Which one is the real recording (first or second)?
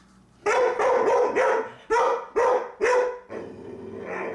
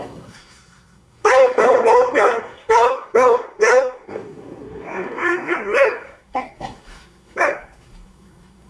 first